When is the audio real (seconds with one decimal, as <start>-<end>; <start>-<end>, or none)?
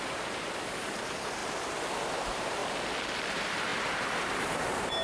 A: 1.4-2.1; 2.6-3.3